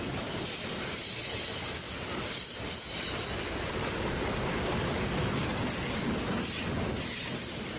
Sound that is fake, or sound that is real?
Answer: real